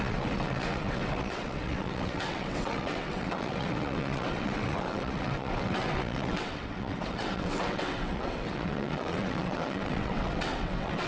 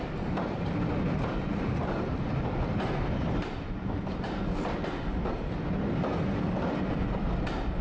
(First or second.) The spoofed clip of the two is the first